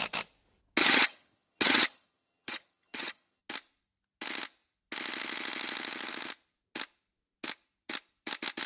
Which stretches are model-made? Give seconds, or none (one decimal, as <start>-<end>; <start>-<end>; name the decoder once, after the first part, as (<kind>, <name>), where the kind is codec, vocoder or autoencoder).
0.8-3.4 (vocoder, HiFi-GAN)